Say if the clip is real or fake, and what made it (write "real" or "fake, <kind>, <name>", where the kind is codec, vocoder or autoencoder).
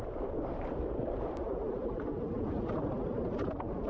real